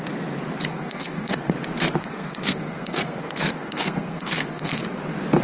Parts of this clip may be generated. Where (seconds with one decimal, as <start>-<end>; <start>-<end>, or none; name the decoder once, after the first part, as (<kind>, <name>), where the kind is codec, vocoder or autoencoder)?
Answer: 0.7-1.5 (codec, SNAC); 2.0-4.8